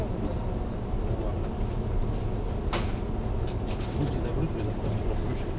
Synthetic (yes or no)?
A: no